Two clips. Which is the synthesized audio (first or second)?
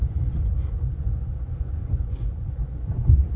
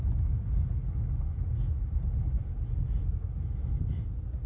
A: first